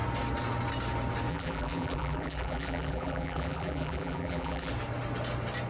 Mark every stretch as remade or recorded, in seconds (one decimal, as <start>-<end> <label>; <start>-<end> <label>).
0.0-1.3 recorded; 1.3-4.7 remade; 4.7-5.7 recorded